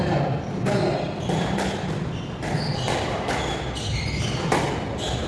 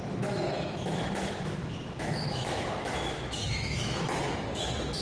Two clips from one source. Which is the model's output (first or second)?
second